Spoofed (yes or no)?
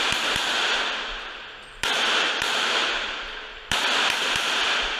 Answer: yes